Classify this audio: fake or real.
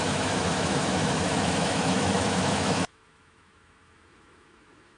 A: fake